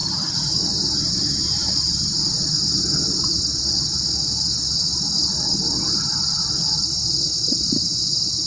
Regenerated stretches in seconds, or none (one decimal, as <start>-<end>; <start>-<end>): none